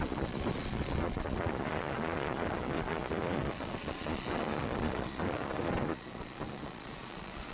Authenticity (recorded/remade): remade